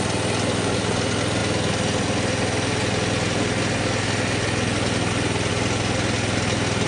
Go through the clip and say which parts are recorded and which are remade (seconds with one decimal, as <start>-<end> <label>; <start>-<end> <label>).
0.0-6.9 recorded